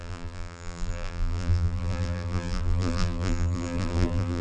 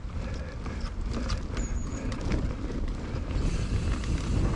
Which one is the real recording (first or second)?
second